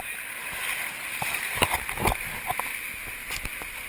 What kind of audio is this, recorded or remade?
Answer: recorded